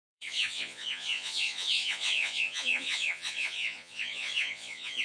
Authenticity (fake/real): fake